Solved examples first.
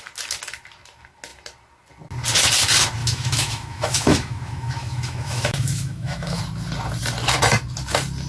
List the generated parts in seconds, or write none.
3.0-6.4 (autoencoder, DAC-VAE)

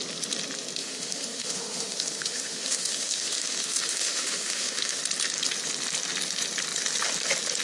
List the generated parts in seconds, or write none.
0.8-5.0 (autoencoder, DAC-VAE)